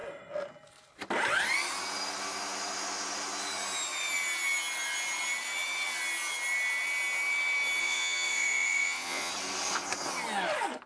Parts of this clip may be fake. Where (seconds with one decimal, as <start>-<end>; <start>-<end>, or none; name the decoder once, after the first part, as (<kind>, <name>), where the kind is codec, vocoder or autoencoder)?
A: 7.8-9.3 (vocoder, Vocos)